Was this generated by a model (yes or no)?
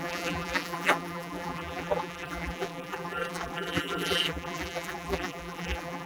yes